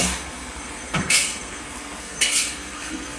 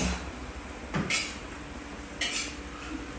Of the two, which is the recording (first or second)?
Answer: second